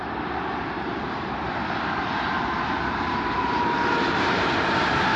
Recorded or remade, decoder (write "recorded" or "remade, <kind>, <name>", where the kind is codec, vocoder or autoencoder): remade, vocoder, BigVGAN v2